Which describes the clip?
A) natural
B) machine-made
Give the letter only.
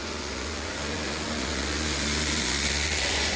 B